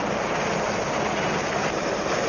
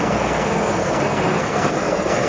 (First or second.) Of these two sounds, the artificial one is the second